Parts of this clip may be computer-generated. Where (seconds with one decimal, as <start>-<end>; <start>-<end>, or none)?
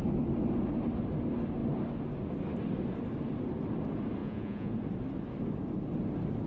4.2-4.7